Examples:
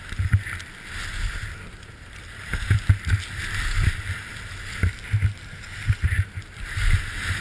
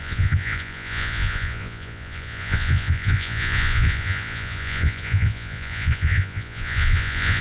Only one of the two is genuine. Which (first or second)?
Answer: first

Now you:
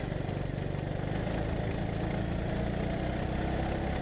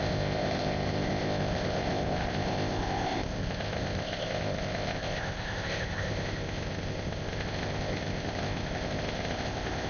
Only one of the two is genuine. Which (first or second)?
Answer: first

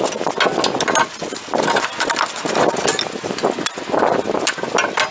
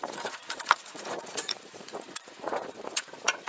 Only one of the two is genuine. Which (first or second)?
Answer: first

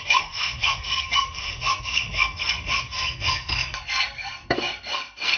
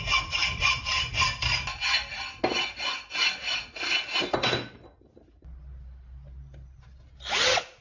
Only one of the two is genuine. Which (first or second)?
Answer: second